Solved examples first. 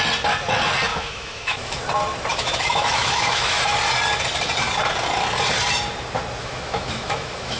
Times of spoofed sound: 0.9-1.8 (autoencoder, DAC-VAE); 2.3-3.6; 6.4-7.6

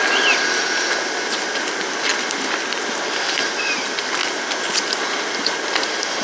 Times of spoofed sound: none

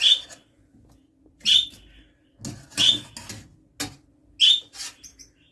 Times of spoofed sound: none

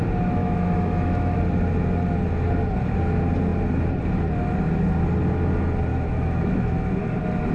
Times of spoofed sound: 0.4-1.4 (autoencoder, DAC-VAE); 5.9-7.0

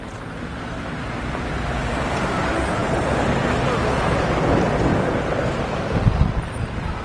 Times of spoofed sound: none

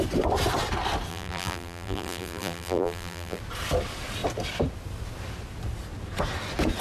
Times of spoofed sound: 1.1-3.4 (vocoder, BigVGAN v2)

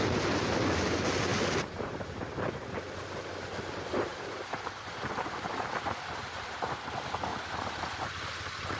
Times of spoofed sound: 1.3-2.0 (vocoder, BigVGAN v2); 4.1-6.8; 7.3-7.8